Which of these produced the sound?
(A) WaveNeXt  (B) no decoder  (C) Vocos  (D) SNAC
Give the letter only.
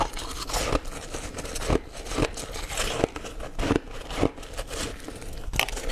B